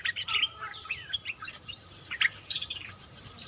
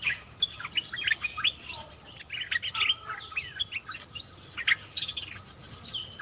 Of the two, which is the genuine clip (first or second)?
second